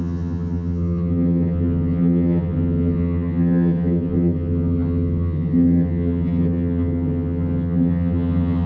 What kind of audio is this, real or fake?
fake